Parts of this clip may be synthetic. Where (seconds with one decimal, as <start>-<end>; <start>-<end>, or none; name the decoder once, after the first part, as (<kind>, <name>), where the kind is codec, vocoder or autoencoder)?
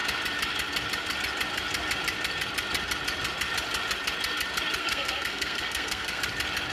4.8-6.2 (codec, SNAC)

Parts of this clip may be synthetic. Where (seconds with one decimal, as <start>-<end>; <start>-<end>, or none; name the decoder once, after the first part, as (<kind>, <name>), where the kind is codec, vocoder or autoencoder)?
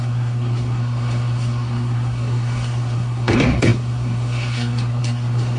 0.0-5.6 (codec, SNAC)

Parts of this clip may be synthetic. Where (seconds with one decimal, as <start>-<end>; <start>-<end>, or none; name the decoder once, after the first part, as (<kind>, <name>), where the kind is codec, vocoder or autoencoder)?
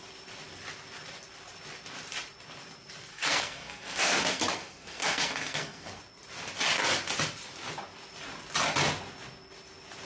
3.1-6.0 (codec, SNAC)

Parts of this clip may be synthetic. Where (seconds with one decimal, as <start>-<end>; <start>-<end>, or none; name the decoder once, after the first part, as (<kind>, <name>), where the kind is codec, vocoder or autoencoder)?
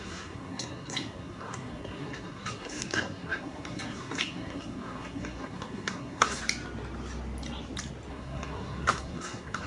0.0-6.4 (codec, SNAC); 8.1-9.7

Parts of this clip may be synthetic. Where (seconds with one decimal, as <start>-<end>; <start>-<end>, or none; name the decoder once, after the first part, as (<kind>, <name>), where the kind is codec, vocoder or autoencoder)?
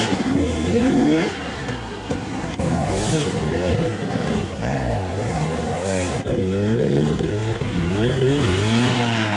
0.0-9.4 (codec, SNAC)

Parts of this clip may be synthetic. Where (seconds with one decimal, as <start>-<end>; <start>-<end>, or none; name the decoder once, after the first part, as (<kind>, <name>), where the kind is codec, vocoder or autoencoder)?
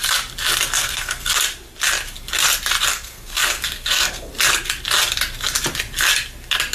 0.8-1.3 (codec, SNAC); 2.9-4.3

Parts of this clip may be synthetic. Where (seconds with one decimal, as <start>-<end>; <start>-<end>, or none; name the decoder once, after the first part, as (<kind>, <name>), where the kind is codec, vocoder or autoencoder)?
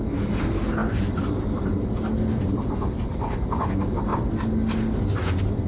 none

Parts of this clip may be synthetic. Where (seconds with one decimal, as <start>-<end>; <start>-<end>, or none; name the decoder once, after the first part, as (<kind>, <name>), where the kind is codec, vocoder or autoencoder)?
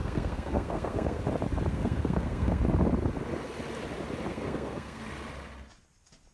0.0-1.2 (codec, SNAC); 1.7-2.6; 4.3-5.0